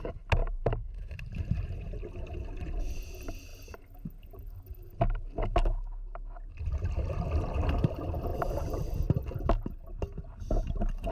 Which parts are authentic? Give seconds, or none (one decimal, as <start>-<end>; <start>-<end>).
0.0-0.4; 2.9-8.3; 9.0-11.1